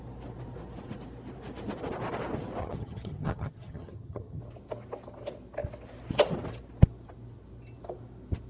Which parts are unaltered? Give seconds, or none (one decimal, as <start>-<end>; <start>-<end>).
0.0-2.6; 4.4-8.5